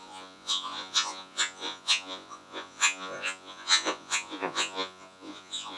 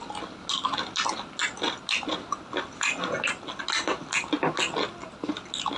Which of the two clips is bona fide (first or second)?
second